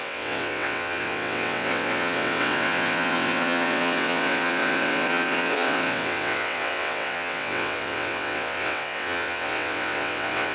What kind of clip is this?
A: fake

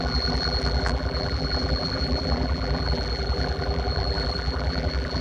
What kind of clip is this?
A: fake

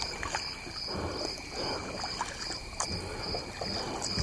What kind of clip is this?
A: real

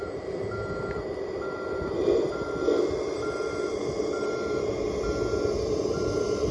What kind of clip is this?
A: real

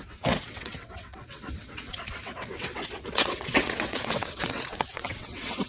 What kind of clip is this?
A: fake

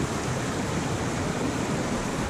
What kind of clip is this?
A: real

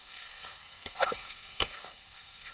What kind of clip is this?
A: fake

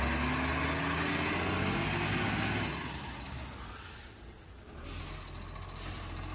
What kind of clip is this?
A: real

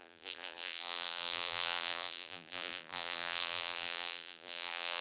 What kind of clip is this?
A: fake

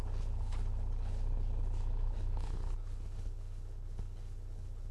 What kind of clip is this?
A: fake